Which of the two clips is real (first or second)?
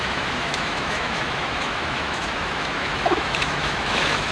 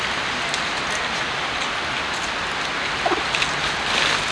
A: second